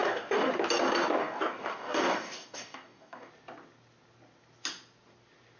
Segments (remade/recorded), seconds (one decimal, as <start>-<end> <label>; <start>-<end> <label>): 0.0-0.5 remade; 0.5-1.2 recorded; 1.2-3.3 remade; 3.3-5.6 recorded